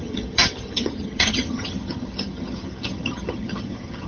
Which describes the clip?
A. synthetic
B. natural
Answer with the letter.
A